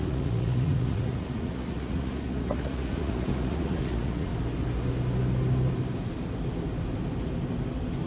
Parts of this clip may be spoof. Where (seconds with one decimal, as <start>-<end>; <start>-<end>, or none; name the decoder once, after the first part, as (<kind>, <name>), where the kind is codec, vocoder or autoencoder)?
0.0-4.3 (vocoder, Vocos)